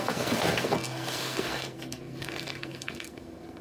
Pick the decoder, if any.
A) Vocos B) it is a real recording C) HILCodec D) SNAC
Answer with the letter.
D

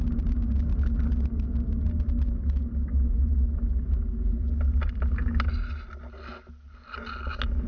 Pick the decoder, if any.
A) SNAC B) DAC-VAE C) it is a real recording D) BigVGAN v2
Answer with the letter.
C